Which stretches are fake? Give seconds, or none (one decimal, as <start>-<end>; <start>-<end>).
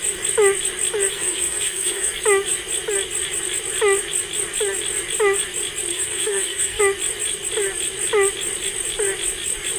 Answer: 1.1-2.1; 5.9-6.8